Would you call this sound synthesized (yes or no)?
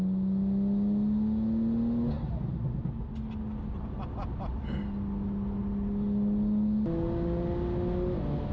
no